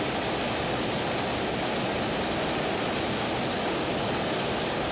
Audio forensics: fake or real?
real